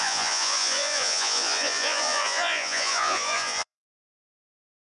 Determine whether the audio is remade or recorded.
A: remade